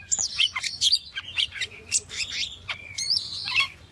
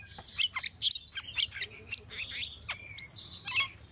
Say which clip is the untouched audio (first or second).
second